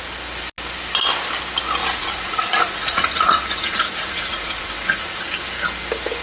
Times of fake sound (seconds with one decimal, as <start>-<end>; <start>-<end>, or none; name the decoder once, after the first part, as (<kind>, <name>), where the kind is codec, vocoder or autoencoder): 1.8-5.2 (vocoder, Vocos)